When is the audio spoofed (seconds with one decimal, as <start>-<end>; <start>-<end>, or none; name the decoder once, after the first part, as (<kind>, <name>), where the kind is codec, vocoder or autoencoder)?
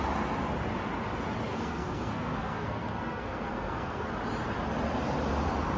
1.5-4.1 (codec, SNAC)